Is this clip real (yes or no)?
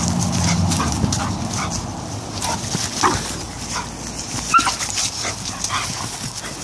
yes